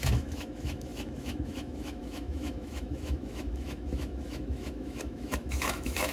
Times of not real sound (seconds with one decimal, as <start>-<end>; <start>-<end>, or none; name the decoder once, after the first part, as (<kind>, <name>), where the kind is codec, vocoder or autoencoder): 0.0-6.1 (autoencoder, DAC-VAE)